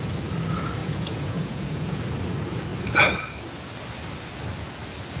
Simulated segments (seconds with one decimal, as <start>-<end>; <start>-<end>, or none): 0.8-2.0